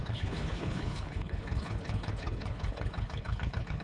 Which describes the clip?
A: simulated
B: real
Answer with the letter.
A